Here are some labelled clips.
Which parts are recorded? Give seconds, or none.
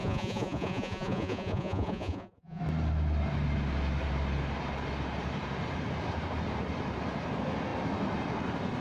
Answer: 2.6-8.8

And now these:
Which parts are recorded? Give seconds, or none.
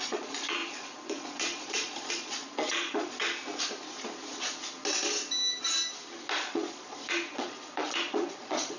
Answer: 3.2-6.4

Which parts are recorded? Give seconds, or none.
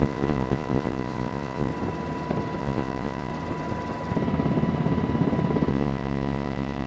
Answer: 1.7-2.6; 3.3-5.7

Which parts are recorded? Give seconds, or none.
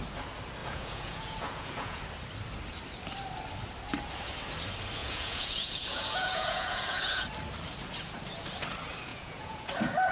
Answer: 0.0-0.6; 2.0-5.0; 7.3-9.1; 9.6-10.1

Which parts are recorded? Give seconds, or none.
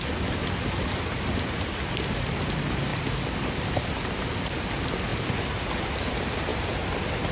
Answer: 0.0-7.3